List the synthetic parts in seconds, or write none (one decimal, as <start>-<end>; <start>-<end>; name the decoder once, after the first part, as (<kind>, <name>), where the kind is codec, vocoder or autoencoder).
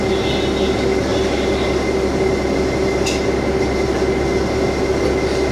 none